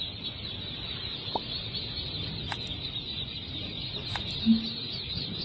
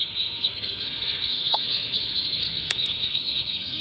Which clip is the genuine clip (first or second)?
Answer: first